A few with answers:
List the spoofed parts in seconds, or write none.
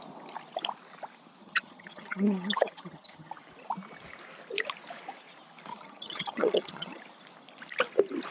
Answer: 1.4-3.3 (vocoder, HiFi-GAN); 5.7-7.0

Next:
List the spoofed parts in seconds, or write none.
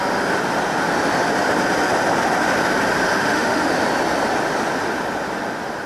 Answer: 3.1-3.7 (autoencoder, DAC-VAE)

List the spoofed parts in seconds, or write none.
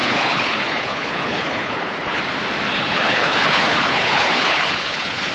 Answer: 0.0-2.2 (codec, HILCodec); 2.7-5.3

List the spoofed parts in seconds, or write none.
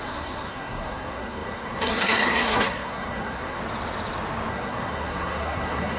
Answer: 0.0-3.6 (codec, SNAC); 4.5-6.0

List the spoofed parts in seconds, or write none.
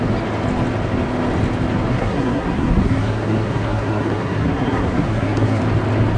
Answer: 1.9-5.6 (codec, SNAC)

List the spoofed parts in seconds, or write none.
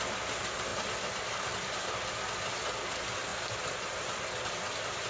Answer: none